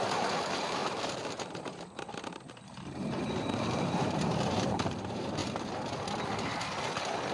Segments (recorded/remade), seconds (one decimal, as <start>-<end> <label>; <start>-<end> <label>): 0.0-5.4 remade; 5.4-7.3 recorded